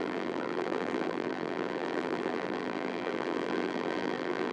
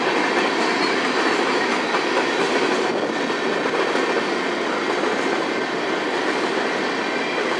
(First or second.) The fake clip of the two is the first